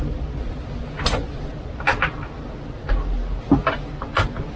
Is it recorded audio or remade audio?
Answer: recorded